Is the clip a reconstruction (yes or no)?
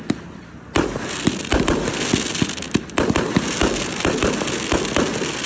no